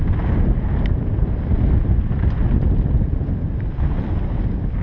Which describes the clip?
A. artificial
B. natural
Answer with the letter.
B